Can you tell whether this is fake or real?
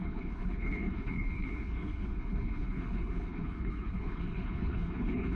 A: fake